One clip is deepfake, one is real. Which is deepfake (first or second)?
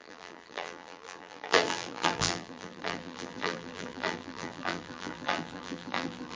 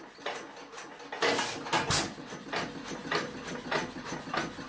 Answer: first